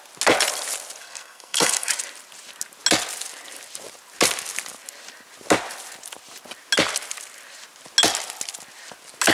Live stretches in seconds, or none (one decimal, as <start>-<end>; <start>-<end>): 0.0-1.0; 1.9-9.3